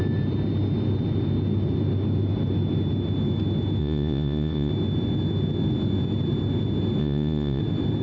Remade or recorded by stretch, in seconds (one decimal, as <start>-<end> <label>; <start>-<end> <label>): 0.0-3.8 recorded; 3.8-4.7 remade; 4.7-7.0 recorded; 7.0-7.6 remade; 7.6-8.0 recorded